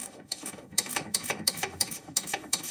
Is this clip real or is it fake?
fake